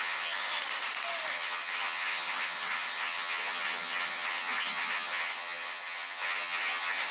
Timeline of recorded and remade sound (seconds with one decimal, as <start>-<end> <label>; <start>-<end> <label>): 0.0-0.6 remade; 0.6-1.3 recorded; 1.3-7.1 remade